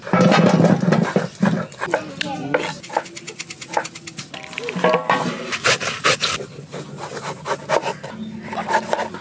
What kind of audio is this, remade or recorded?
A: recorded